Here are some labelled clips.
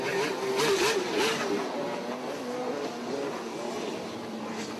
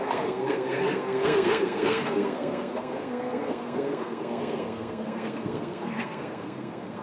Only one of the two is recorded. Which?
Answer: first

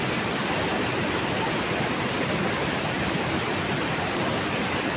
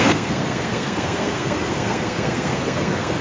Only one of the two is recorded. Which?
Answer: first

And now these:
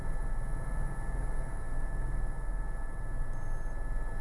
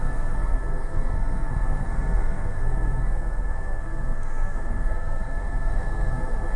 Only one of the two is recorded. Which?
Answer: first